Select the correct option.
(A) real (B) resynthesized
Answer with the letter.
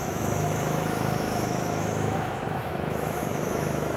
B